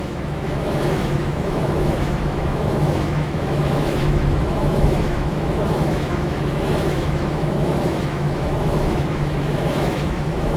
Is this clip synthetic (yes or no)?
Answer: yes